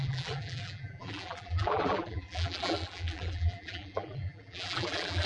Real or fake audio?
fake